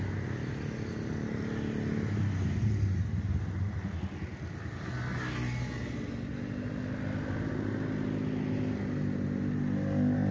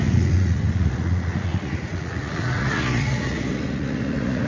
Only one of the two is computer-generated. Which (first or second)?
second